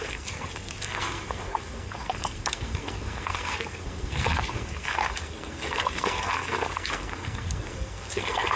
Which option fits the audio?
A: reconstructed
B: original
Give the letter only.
A